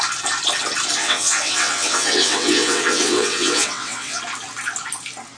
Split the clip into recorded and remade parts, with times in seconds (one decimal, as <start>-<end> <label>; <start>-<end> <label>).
0.0-1.0 recorded; 1.0-4.2 remade; 4.2-5.4 recorded